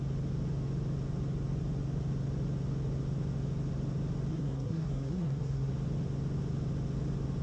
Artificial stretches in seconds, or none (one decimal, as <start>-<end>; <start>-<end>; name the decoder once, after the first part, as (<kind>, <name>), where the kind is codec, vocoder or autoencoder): 4.3-5.7 (codec, SNAC)